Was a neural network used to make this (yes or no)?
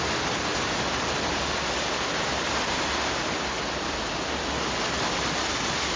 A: no